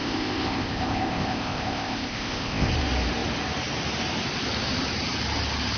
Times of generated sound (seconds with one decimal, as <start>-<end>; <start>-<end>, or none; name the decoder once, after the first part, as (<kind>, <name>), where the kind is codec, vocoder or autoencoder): 0.0-2.7 (codec, ZipCodec)